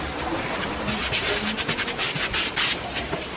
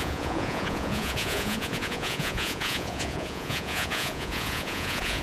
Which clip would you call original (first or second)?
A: first